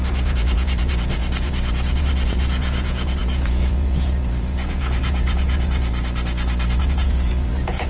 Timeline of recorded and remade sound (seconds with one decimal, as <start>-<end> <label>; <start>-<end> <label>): 0.0-5.9 remade; 5.9-6.8 recorded; 6.8-7.9 remade